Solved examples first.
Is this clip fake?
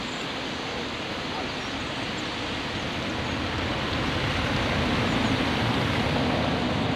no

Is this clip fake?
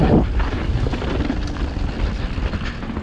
no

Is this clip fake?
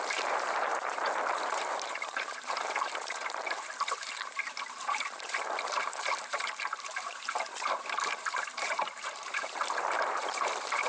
yes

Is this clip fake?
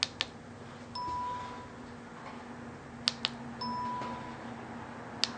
no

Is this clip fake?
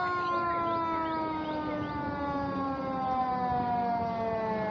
no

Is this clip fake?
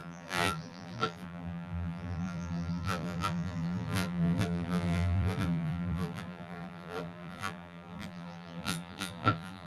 yes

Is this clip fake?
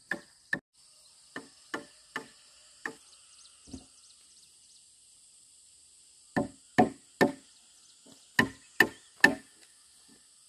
no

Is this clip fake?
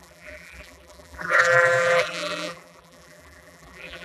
yes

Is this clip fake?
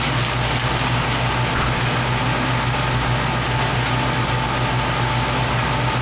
no